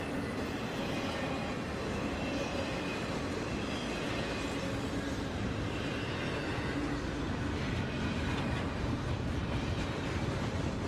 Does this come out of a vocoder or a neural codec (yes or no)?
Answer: no